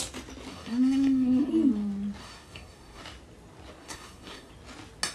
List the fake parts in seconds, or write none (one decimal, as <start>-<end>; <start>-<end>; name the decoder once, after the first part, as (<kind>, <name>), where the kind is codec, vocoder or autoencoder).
0.5-1.5 (codec, SNAC); 2.2-3.0; 3.8-4.5